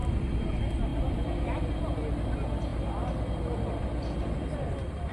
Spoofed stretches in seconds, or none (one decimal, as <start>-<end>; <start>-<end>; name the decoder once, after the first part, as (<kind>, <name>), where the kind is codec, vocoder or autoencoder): none